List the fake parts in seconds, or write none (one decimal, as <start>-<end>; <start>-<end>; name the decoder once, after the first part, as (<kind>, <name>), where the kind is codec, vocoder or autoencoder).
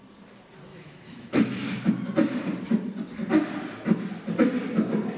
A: 0.7-1.7 (autoencoder, DAC-VAE)